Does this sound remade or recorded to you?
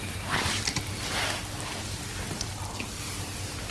recorded